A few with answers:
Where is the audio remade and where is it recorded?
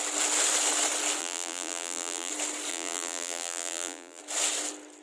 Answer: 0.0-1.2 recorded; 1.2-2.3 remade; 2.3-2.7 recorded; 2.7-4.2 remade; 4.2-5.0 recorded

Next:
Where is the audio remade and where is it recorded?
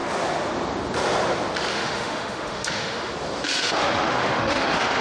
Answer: 0.0-1.7 recorded; 1.7-3.1 remade; 3.1-3.6 recorded; 3.6-5.0 remade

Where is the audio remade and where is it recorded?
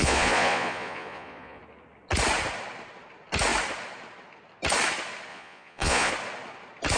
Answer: 0.0-1.6 remade; 1.6-5.3 recorded; 5.3-6.1 remade; 6.1-7.0 recorded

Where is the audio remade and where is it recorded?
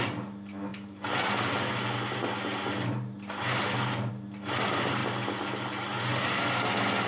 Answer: 0.0-7.1 recorded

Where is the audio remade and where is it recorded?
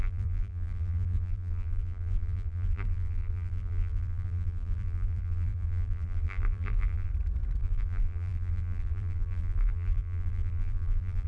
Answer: 0.0-7.1 remade; 7.1-7.6 recorded; 7.6-11.3 remade